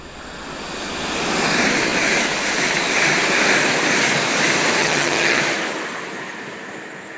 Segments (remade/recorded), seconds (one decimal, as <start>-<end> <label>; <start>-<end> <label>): 0.0-4.8 recorded; 4.8-5.4 remade; 5.4-7.2 recorded